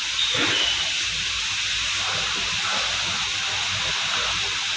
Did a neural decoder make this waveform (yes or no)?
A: no